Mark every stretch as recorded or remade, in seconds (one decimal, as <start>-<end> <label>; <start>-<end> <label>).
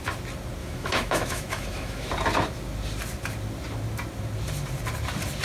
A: 0.0-0.6 recorded; 0.6-2.1 remade; 2.1-5.4 recorded